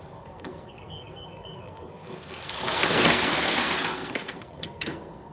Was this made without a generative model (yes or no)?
no